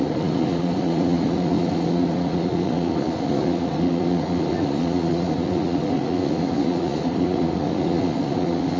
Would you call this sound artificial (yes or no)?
yes